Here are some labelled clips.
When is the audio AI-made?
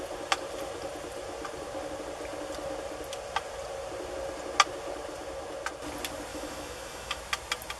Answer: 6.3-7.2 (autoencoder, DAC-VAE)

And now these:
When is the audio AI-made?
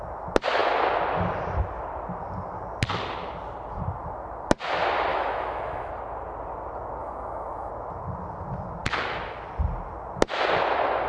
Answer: 5.1-5.9 (autoencoder, DAC-VAE); 7.0-7.7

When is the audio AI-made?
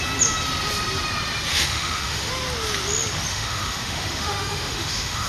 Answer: 1.5-2.3 (autoencoder, DAC-VAE); 3.3-5.3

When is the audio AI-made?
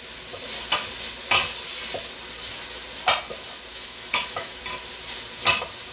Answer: 3.7-4.6 (autoencoder, DAC-VAE)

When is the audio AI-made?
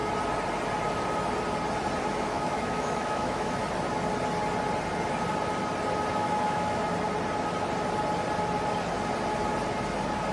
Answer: 2.0-3.6 (autoencoder, DAC-VAE); 6.1-6.8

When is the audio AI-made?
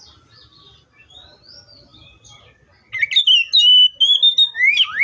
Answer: none